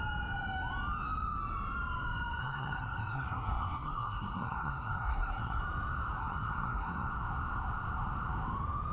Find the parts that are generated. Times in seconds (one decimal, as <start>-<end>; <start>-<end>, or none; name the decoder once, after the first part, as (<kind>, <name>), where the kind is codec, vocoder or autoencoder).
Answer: 2.4-5.6 (codec, SNAC); 6.2-7.1